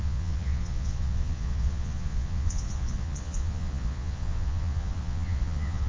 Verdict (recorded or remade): remade